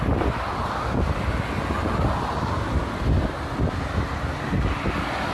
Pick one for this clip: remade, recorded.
recorded